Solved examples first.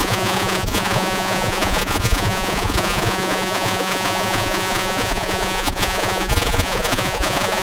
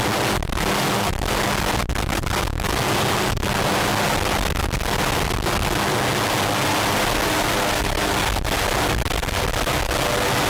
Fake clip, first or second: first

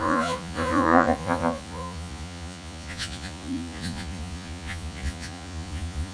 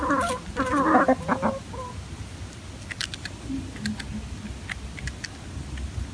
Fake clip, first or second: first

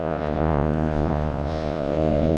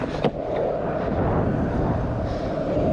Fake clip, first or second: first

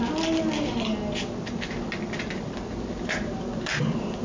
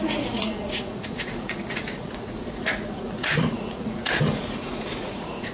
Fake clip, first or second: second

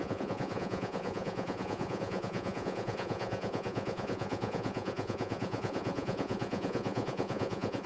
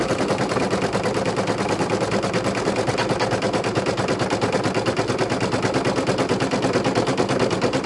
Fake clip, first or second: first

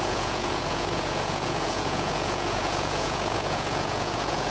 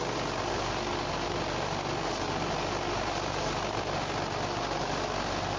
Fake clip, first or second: first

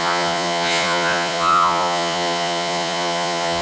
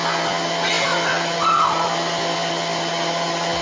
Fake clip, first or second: first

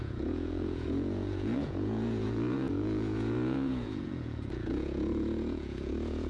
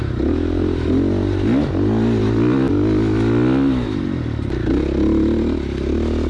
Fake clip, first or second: first